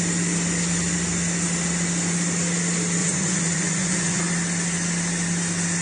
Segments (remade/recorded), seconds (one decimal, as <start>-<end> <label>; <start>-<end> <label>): 0.0-3.0 recorded; 3.0-4.2 remade; 4.2-5.8 recorded